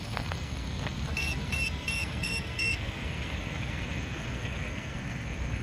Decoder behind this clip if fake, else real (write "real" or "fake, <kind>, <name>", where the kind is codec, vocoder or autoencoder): fake, codec, SNAC